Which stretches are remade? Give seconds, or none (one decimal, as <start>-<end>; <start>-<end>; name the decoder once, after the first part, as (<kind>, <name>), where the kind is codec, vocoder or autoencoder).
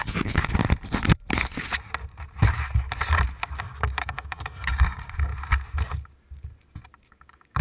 0.0-0.4 (codec, DAC); 3.6-5.3; 7.1-7.6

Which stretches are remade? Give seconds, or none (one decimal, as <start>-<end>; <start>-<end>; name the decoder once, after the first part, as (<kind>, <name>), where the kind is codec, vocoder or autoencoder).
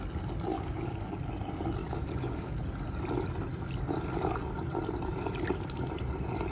0.5-1.2 (codec, DAC); 1.8-2.6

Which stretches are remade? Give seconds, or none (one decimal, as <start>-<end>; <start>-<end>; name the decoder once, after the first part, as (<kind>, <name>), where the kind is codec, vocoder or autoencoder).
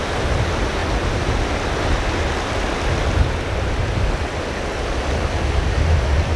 none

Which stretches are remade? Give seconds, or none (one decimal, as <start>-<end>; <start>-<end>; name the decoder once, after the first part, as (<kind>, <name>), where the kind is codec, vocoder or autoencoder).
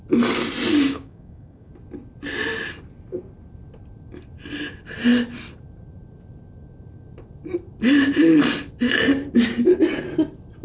0.7-1.7 (codec, DAC)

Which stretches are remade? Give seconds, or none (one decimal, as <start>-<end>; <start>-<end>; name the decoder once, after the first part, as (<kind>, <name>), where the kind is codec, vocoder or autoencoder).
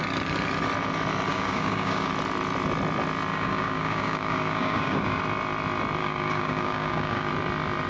1.3-2.1 (codec, DAC); 3.3-5.2; 6.0-7.3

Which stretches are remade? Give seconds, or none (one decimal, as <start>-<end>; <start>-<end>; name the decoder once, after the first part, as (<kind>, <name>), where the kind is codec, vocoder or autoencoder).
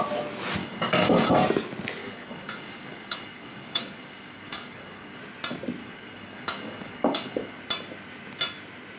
0.6-1.3 (codec, DAC); 2.0-5.2; 5.8-7.6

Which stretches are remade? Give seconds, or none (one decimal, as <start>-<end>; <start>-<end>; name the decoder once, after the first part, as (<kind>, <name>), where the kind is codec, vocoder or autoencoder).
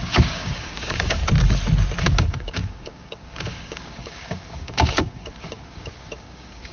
0.0-1.2 (codec, DAC); 2.0-6.7